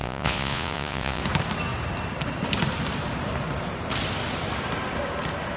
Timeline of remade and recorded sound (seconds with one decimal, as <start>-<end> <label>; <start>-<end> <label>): 0.0-1.2 remade; 1.2-5.6 recorded